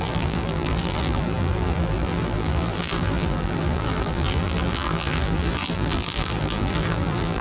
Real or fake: fake